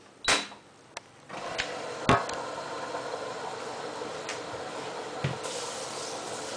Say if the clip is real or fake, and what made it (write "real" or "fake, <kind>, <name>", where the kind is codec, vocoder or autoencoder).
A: real